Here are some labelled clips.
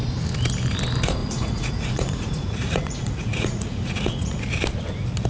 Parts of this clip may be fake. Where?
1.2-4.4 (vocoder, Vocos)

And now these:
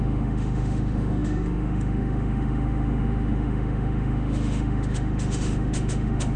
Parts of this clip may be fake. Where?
0.0-6.4 (autoencoder, DAC-VAE)

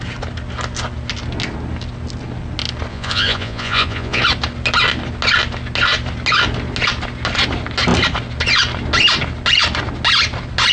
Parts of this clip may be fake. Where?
2.9-4.2 (vocoder, Vocos)

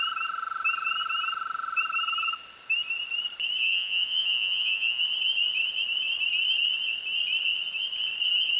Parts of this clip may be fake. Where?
3.6-5.0 (vocoder, Vocos)

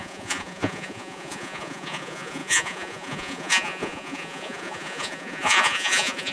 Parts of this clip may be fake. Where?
0.0-6.3 (vocoder, Vocos)